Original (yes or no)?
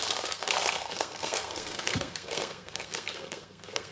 no